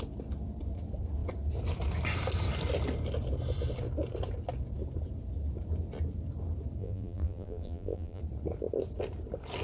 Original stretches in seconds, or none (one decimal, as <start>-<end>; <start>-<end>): 0.0-6.8; 8.2-9.6